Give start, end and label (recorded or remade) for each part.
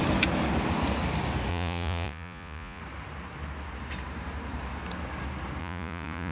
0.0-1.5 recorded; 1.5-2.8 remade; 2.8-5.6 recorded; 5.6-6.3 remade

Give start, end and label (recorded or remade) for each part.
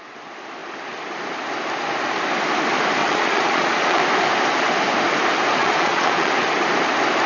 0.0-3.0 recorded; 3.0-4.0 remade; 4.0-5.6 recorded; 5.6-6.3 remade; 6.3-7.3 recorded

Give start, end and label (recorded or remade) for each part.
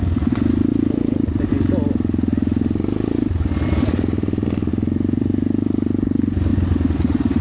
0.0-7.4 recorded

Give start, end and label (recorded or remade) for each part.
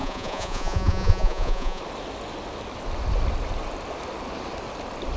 0.0-1.8 remade; 1.8-5.2 recorded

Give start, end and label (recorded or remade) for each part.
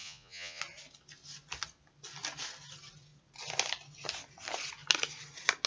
0.0-0.6 remade; 0.6-5.7 recorded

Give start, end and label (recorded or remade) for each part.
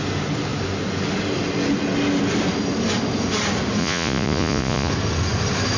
0.0-3.8 recorded; 3.8-4.9 remade; 4.9-5.8 recorded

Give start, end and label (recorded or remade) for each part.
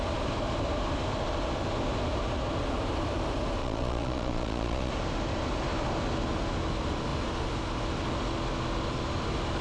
0.0-3.6 recorded; 3.6-4.9 remade; 4.9-9.6 recorded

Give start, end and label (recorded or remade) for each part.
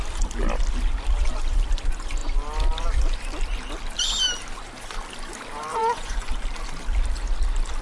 0.0-5.7 recorded; 5.7-6.3 remade; 6.3-7.8 recorded